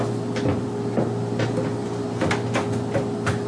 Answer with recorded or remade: recorded